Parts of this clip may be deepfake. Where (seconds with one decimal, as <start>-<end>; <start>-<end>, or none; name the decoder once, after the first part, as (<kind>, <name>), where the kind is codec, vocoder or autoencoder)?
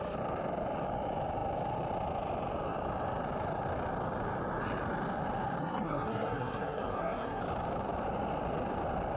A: 5.6-7.4 (codec, SNAC)